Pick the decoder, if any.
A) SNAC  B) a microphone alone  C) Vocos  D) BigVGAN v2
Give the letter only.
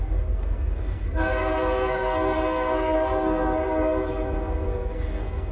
A